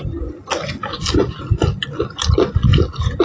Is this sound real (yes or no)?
yes